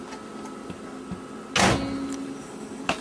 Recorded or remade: recorded